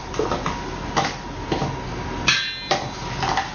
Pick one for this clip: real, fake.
real